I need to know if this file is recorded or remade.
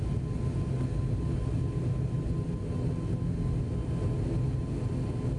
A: recorded